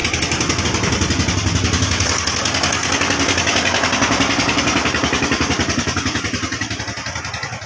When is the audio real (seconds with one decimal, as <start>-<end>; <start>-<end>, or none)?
0.0-2.8; 6.8-7.7